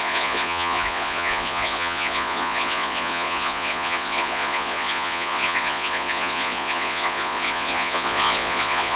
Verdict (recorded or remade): remade